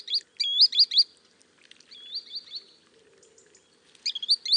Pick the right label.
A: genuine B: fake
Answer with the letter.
A